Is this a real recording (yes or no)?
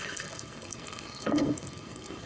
no